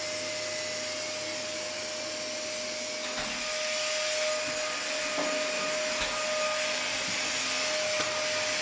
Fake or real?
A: real